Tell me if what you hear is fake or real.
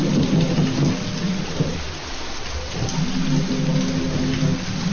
real